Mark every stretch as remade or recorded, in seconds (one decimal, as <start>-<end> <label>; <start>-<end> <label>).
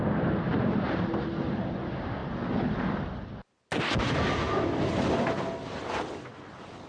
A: 0.0-6.9 recorded